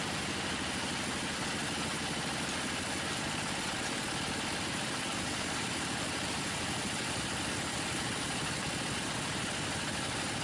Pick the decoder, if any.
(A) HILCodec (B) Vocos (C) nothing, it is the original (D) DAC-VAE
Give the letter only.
C